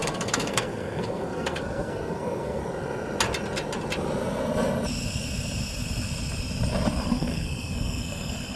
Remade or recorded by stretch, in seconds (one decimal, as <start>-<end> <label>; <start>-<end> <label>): 0.0-2.6 remade; 2.6-7.0 recorded; 7.0-8.6 remade